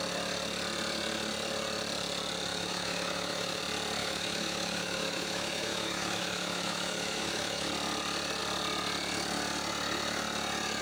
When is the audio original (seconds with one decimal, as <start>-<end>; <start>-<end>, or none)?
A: 0.0-2.5; 3.6-4.0; 7.7-10.8

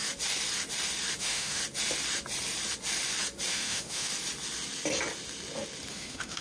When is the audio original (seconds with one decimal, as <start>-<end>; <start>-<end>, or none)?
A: 0.0-1.2; 1.6-3.5; 4.1-5.9

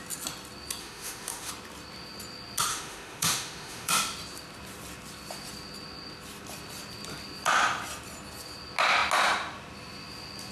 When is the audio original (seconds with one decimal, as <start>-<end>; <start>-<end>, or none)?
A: 0.0-0.8; 1.5-2.7; 3.9-10.5